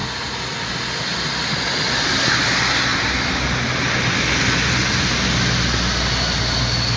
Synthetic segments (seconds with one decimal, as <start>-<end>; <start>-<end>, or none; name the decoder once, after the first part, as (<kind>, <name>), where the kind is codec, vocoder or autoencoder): none